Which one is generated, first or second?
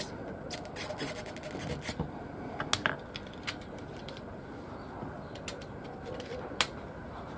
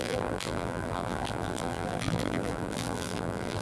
second